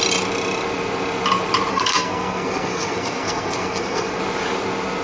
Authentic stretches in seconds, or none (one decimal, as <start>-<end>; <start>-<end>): 0.0-1.7; 4.2-5.0